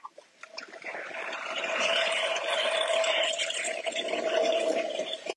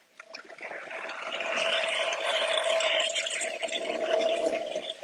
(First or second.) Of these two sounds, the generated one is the first